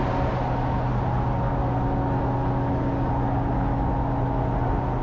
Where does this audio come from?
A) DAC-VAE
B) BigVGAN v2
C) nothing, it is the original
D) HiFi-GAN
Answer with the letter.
C